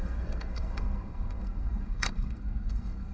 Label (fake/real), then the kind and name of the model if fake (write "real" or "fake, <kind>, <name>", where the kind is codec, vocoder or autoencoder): fake, codec, SNAC